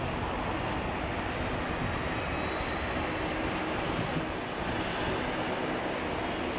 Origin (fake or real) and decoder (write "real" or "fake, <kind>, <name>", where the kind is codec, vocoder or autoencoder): real